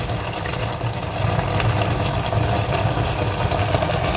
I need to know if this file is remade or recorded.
recorded